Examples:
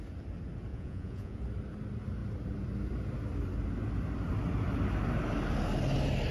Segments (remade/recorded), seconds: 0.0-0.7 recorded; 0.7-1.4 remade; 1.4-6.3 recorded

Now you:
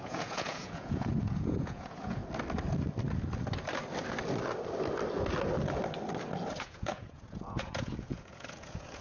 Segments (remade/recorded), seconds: 0.0-2.2 remade; 2.2-6.6 recorded; 6.6-9.0 remade

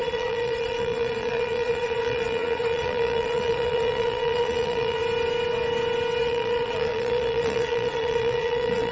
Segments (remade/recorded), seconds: 0.0-5.0 remade; 5.0-6.2 recorded; 6.2-8.9 remade

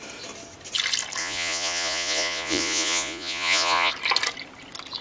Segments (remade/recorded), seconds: 0.0-1.2 recorded; 1.2-3.9 remade; 3.9-5.0 recorded